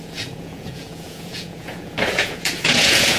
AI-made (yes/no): yes